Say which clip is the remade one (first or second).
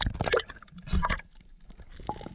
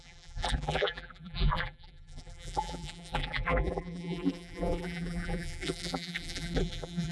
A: second